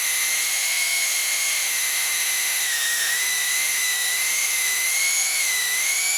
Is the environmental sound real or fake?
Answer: fake